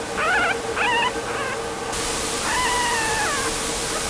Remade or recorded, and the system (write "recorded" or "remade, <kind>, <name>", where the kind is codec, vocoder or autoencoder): recorded